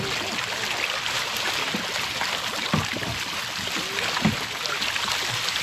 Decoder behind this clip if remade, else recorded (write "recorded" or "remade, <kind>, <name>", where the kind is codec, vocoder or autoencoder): recorded